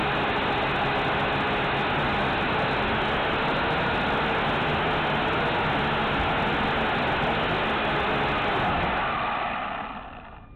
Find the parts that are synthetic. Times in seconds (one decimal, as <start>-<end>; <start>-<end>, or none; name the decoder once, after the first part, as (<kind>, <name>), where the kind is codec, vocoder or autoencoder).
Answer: none